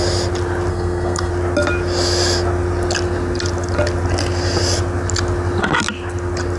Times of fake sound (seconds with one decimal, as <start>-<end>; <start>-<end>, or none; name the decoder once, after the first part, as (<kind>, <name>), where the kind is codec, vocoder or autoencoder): 0.7-1.3 (codec, SNAC)